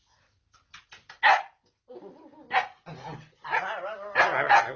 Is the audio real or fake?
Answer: real